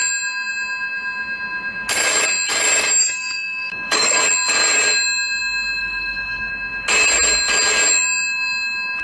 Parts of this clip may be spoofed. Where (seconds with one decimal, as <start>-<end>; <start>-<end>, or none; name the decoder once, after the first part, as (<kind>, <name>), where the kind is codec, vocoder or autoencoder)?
3.0-4.2 (codec, DAC); 5.8-6.5